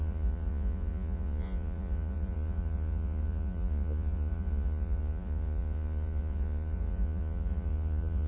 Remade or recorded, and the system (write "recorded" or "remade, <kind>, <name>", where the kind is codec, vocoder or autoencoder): remade, vocoder, Vocos